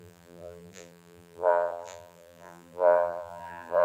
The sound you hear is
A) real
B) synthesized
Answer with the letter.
B